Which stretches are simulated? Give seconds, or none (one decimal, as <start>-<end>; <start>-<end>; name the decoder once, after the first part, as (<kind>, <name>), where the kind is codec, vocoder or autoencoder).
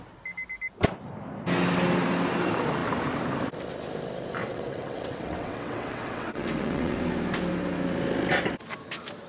4.4-7.0 (vocoder, WaveNeXt)